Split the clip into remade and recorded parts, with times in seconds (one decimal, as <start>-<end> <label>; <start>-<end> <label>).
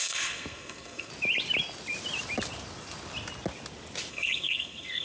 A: 0.0-1.1 remade; 1.1-4.1 recorded; 4.1-5.0 remade